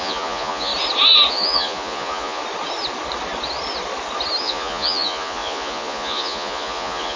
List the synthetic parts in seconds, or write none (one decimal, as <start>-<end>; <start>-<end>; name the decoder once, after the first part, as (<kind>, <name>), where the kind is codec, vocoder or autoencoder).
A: 0.0-0.7 (vocoder, Vocos); 1.3-2.4; 4.4-7.2